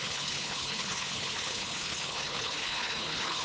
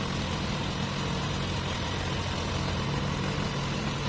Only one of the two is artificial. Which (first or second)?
first